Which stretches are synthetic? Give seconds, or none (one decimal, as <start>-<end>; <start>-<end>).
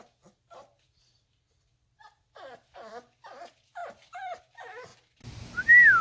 none